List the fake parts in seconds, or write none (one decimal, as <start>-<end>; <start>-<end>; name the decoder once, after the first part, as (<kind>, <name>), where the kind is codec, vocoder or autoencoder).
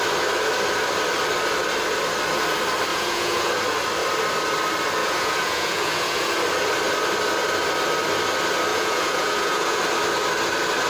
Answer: 2.9-3.5 (vocoder, Vocos); 5.0-6.4; 8.7-9.8